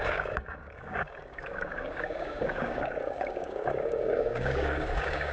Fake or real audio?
fake